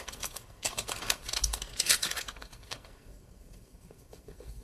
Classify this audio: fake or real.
fake